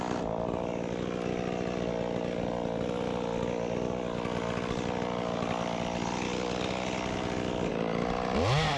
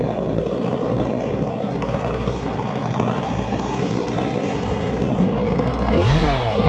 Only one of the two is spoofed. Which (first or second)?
second